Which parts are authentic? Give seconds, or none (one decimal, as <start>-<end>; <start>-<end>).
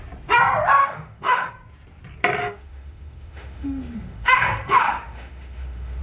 0.0-0.8; 1.5-2.4